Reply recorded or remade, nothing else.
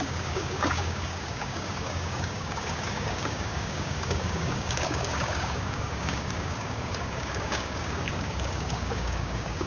remade